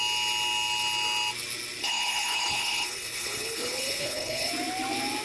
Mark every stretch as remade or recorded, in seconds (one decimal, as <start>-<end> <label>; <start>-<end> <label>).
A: 0.0-1.8 recorded; 1.8-4.5 remade; 4.5-5.2 recorded